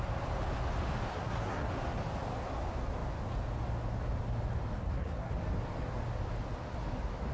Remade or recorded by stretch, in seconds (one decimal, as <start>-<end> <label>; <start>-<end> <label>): 0.0-1.1 recorded; 1.1-1.7 remade; 1.7-4.8 recorded; 4.8-5.3 remade; 5.3-7.3 recorded